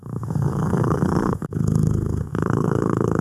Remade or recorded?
remade